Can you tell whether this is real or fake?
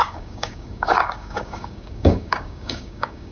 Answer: fake